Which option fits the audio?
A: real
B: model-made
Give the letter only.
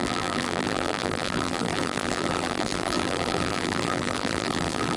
B